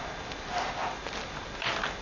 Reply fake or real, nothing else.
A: real